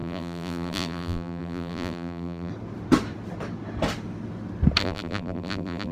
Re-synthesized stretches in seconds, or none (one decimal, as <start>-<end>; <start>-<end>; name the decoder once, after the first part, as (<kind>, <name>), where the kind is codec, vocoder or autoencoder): 0.0-2.5 (vocoder, BigVGAN v2); 4.8-5.9